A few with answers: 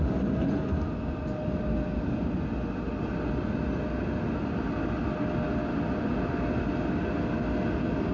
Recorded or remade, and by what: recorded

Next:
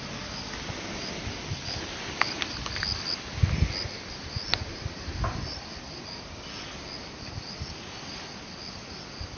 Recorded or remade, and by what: recorded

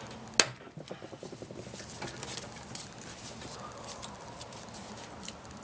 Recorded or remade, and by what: recorded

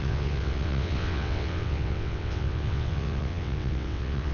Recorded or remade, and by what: remade, vocoder, WaveNeXt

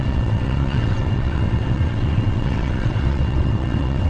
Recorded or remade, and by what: remade, vocoder, WaveNeXt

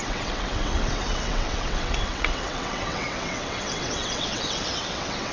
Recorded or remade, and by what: remade, vocoder, WaveNeXt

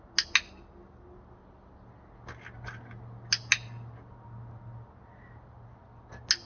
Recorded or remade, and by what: recorded